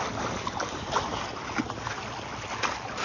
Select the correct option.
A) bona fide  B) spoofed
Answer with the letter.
A